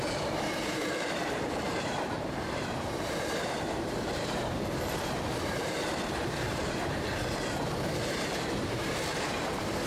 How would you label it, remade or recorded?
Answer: remade